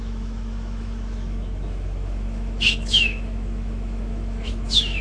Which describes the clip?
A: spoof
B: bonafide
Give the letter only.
A